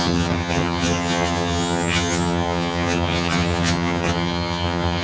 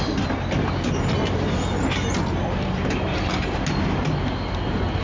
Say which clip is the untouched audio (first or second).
second